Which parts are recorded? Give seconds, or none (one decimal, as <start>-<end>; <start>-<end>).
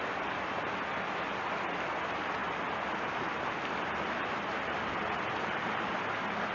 0.0-6.5